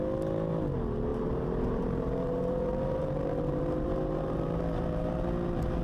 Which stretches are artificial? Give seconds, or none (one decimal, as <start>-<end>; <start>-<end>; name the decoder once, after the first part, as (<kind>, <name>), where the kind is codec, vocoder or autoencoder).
1.1-4.6 (vocoder, BigVGAN v2)